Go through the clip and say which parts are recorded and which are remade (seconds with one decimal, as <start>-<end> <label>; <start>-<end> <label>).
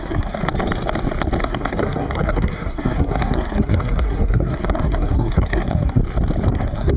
0.0-0.4 remade; 0.4-1.4 recorded; 1.4-6.0 remade; 6.0-6.5 recorded; 6.5-7.0 remade